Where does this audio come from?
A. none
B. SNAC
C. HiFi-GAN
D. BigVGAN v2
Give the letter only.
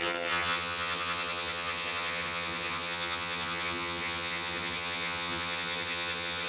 C